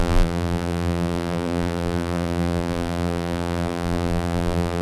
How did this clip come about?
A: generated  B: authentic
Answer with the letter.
A